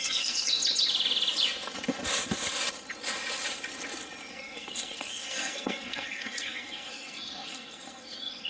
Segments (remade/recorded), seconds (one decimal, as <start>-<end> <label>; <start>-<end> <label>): 0.0-0.6 remade; 0.6-4.3 recorded; 4.3-8.5 remade

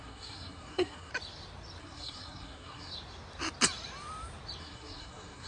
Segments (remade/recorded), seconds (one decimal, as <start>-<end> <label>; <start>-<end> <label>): 0.0-1.1 remade; 1.1-1.8 recorded; 1.8-2.9 remade; 2.9-4.6 recorded; 4.6-5.5 remade